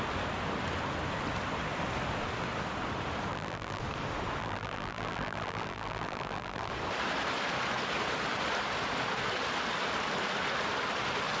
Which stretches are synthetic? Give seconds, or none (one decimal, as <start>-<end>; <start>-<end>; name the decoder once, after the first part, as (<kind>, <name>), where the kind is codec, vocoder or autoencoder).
3.3-3.8 (vocoder, BigVGAN v2); 4.4-6.7